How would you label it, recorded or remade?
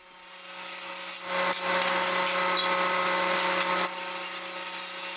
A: recorded